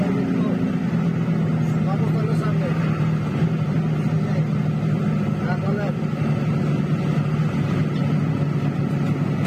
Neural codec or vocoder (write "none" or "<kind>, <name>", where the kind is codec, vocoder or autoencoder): none